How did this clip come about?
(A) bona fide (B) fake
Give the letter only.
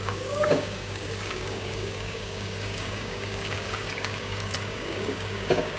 B